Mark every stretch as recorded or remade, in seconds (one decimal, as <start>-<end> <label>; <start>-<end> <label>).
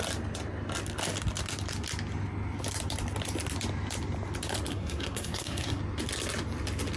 0.0-4.7 recorded; 4.7-5.8 remade; 5.8-7.0 recorded